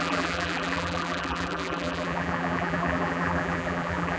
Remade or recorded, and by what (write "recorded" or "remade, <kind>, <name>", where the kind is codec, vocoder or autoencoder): remade, vocoder, BigVGAN v2